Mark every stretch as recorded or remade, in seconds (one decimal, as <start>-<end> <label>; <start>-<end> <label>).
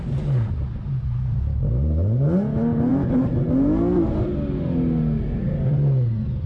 0.0-6.5 recorded